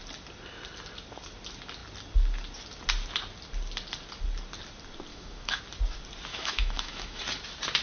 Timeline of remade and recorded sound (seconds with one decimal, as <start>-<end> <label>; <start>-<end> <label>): 0.0-5.1 recorded; 5.1-5.6 remade; 5.6-6.3 recorded; 6.3-7.2 remade; 7.2-7.8 recorded